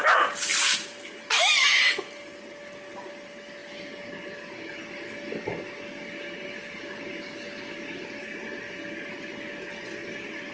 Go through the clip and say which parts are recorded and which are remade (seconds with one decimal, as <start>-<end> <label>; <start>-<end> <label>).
0.0-10.5 recorded